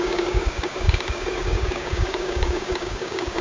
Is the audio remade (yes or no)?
yes